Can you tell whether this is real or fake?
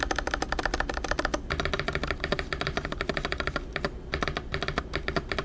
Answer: real